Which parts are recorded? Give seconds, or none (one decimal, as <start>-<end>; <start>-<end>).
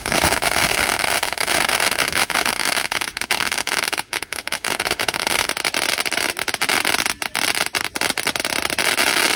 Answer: 5.5-9.4